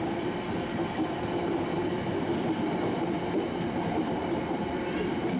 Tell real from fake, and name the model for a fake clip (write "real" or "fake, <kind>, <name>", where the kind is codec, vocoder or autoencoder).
real